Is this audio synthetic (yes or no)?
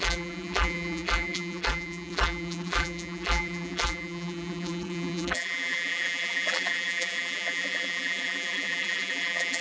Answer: yes